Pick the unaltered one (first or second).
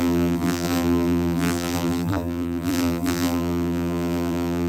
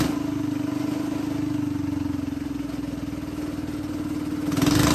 second